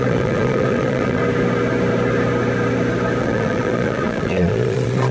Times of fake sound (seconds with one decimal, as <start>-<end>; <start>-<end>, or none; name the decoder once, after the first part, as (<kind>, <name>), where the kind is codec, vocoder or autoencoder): 0.0-1.2 (vocoder, Vocos); 3.2-5.1